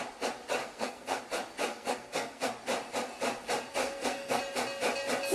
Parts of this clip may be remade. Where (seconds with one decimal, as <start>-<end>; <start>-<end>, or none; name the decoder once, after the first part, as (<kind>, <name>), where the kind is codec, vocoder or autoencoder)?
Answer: 0.6-1.2 (codec, SNAC); 1.7-2.5; 3.8-4.4